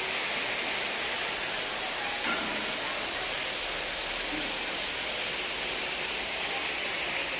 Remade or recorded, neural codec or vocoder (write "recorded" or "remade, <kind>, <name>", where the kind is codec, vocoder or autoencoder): recorded